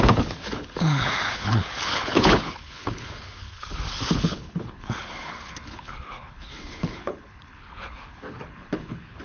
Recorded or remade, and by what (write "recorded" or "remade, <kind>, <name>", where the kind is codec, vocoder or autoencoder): remade, codec, HILCodec